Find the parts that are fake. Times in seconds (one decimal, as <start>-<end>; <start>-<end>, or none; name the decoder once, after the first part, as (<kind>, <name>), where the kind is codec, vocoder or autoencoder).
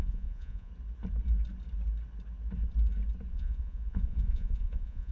0.0-0.7 (vocoder, Vocos); 3.3-5.1